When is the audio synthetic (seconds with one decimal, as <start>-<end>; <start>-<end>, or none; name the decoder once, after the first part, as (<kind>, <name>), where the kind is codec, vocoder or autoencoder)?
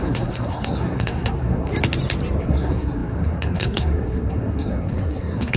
0.0-1.7 (codec, SNAC); 2.4-5.6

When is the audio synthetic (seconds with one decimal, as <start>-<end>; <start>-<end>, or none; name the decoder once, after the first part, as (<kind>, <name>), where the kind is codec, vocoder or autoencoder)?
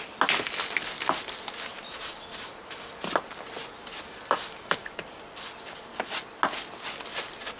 1.7-2.9 (vocoder, BigVGAN v2); 4.8-5.5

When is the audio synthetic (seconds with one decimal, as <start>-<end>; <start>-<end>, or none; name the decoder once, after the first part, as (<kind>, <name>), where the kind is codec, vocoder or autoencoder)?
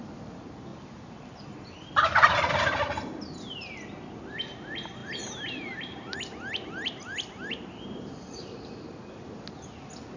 5.0-8.9 (vocoder, BigVGAN v2)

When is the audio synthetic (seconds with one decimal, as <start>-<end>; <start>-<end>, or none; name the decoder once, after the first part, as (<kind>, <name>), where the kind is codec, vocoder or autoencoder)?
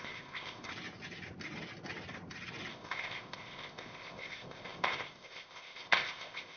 0.0-0.7 (codec, ZipCodec); 2.7-6.6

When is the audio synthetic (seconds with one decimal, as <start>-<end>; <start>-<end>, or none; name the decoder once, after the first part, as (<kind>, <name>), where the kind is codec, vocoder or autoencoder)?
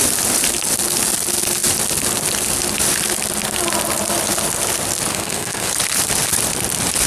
5.1-5.7 (codec, SNAC)